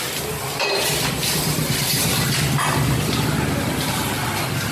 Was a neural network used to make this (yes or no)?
no